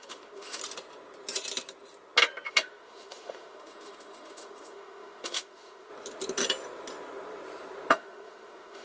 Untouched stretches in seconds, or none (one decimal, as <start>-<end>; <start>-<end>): 0.6-2.5; 5.9-7.9